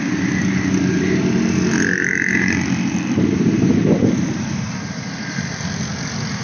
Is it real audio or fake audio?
real